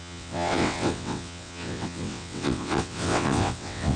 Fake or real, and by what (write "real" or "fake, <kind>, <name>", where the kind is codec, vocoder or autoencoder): fake, vocoder, WaveNeXt